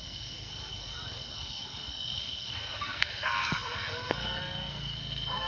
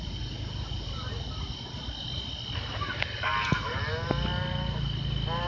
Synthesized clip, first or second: first